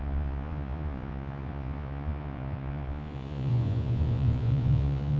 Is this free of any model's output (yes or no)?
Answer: no